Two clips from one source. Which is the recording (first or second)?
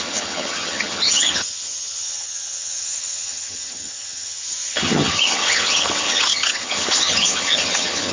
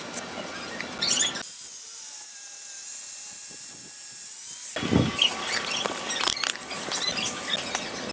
second